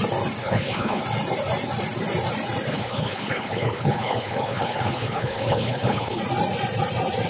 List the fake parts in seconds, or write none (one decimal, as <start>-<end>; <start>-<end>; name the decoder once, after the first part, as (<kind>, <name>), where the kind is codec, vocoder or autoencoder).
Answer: 0.4-1.0 (codec, HILCodec); 2.7-6.2